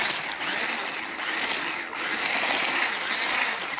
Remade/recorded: recorded